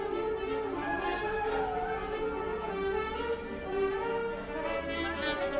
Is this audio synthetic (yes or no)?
no